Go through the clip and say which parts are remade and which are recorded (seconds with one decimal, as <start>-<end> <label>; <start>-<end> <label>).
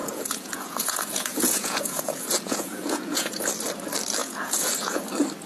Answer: 0.0-3.3 remade; 3.3-4.2 recorded; 4.2-5.0 remade; 5.0-5.5 recorded